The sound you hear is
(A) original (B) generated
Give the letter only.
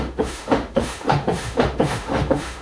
B